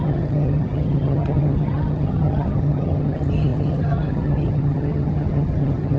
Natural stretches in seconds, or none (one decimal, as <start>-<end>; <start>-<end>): none